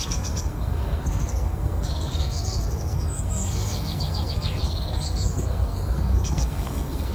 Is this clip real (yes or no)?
no